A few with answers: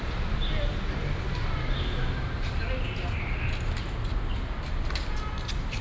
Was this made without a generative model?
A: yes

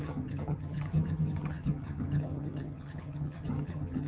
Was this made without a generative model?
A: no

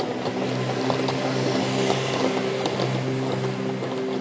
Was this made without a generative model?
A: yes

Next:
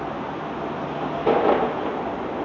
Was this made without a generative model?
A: yes